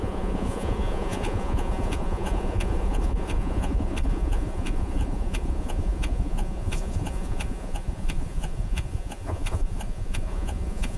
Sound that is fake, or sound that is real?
fake